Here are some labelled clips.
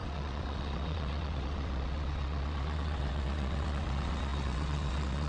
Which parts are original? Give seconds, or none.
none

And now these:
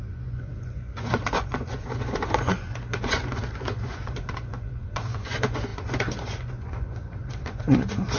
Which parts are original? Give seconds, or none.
none

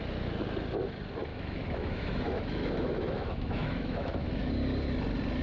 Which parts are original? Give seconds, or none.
0.0-1.3; 4.5-5.4

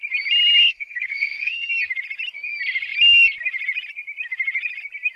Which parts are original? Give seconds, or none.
0.0-0.6; 1.7-5.2

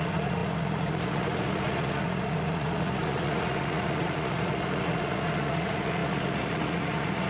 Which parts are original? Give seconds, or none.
none

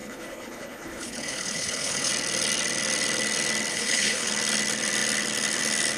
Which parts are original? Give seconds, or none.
2.1-3.7; 4.3-6.0

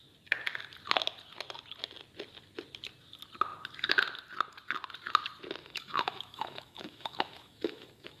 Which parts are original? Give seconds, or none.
0.0-5.6

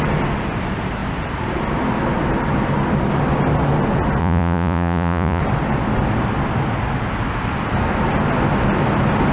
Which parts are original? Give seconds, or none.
0.0-4.2; 5.4-9.3